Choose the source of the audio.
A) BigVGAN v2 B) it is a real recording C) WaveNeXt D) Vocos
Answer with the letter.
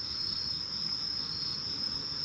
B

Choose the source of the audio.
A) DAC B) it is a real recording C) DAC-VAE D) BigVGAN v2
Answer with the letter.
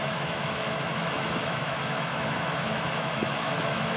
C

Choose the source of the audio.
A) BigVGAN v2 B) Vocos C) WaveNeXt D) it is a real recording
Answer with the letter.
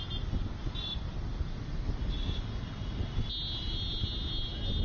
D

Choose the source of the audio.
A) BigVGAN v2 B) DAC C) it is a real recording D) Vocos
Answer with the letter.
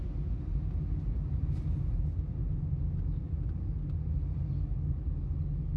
C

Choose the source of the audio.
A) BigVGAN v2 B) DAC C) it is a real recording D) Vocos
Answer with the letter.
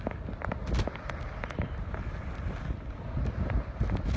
C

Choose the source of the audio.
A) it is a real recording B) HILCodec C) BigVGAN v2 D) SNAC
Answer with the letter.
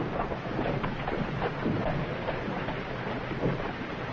C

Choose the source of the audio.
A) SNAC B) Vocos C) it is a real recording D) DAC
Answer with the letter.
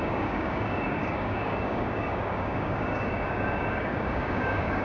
D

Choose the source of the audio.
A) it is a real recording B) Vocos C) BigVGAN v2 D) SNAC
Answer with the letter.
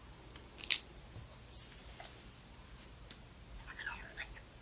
A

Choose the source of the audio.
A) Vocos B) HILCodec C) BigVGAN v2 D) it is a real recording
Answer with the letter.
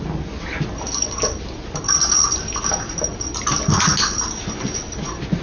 D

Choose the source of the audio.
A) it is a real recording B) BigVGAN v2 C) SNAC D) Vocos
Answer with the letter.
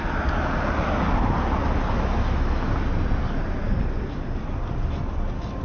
A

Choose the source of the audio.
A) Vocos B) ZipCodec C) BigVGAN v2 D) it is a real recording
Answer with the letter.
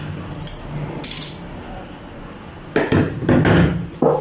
D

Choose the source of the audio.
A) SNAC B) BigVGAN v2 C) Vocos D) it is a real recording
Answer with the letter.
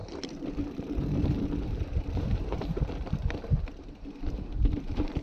B